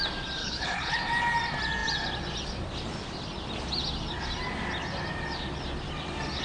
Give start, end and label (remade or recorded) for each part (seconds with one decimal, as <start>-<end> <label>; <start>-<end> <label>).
0.0-0.4 recorded; 0.4-1.0 remade; 1.0-6.4 recorded